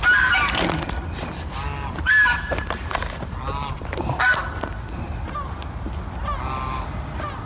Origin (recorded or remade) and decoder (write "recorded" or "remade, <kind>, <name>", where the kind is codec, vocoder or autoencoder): recorded